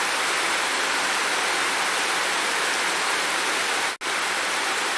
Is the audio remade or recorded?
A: recorded